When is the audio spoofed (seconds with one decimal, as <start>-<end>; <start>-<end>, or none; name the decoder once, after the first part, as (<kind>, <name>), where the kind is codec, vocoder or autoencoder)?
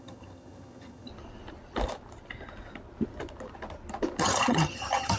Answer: 0.0-1.1 (vocoder, HiFi-GAN); 4.2-5.2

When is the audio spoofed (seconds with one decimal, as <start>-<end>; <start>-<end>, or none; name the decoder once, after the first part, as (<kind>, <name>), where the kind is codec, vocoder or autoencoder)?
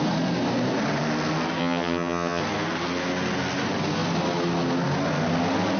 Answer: 1.6-2.4 (vocoder, HiFi-GAN)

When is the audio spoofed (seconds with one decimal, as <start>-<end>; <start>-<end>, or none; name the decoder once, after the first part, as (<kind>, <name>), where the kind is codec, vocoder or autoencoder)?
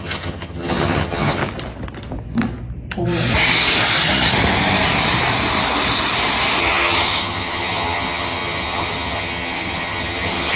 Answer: 0.0-1.4 (vocoder, HiFi-GAN); 6.6-10.6